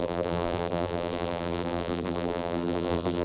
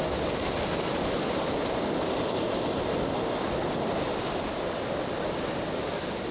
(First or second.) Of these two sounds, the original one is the second